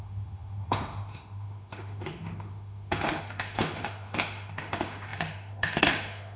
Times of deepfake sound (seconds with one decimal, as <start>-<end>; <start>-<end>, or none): 0.0-6.4